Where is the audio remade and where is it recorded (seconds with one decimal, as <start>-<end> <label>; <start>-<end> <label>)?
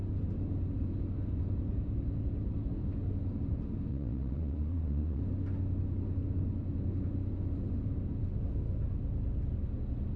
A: 0.0-3.9 recorded; 3.9-5.2 remade; 5.2-10.2 recorded